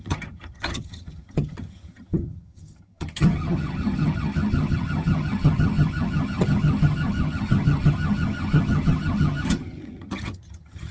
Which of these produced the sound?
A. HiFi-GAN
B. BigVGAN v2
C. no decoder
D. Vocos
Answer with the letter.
A